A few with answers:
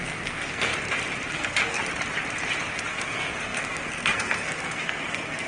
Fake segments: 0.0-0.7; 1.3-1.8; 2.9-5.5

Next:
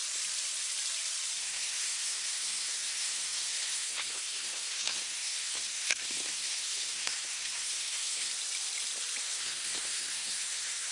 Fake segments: 1.4-8.3; 9.2-10.9

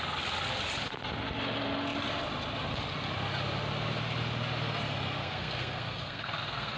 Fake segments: 5.2-6.8

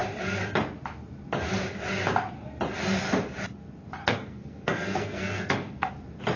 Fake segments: 4.0-5.9